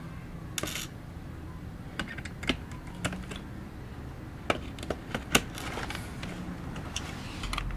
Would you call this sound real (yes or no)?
yes